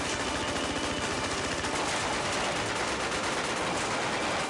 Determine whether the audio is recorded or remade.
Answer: recorded